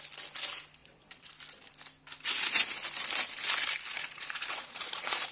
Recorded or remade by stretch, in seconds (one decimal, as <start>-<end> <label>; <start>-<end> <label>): 0.0-0.8 recorded; 0.8-1.3 remade; 1.3-3.9 recorded; 3.9-5.3 remade

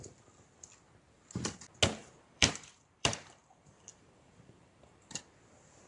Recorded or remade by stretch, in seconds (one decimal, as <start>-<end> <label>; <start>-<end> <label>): 0.0-2.0 recorded; 2.0-5.2 remade; 5.2-5.9 recorded